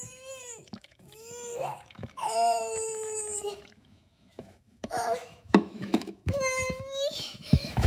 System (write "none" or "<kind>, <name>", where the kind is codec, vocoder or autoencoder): autoencoder, DAC-VAE